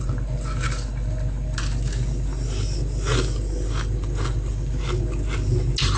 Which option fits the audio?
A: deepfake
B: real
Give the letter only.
B